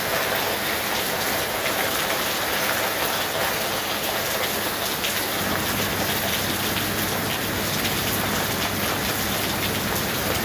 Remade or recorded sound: recorded